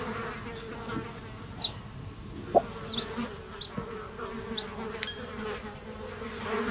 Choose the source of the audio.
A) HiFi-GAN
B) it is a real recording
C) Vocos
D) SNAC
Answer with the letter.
B